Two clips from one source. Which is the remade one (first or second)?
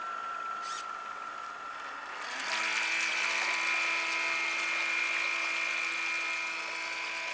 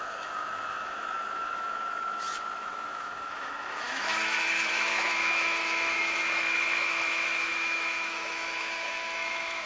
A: second